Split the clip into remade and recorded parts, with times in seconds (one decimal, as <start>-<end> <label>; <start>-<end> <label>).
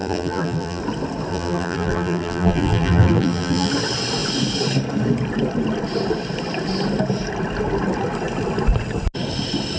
0.0-0.8 remade; 0.8-1.3 recorded; 1.3-3.7 remade; 3.7-9.8 recorded